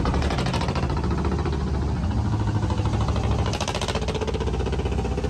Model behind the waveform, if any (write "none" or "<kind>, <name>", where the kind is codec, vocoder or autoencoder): none